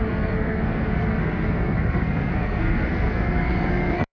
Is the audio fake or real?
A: fake